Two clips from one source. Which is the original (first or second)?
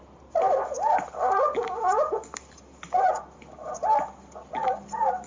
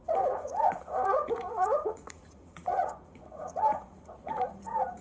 first